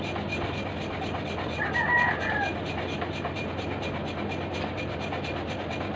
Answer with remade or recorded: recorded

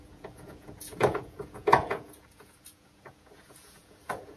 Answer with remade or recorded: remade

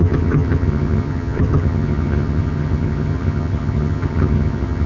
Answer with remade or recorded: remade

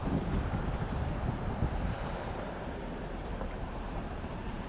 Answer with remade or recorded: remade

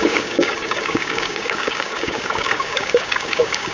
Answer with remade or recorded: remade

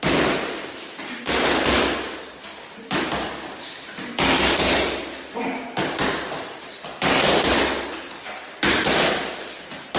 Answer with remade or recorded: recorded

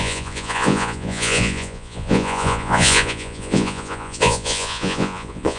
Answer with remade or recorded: remade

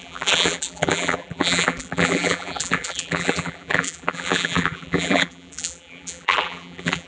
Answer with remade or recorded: remade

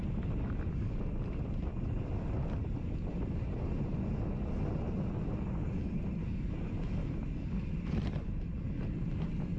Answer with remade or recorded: recorded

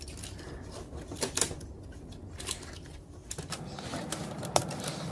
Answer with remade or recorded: recorded